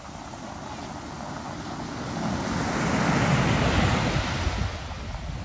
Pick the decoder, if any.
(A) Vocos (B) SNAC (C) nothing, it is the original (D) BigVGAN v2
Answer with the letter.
C